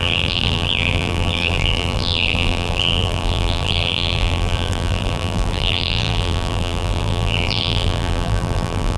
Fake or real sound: fake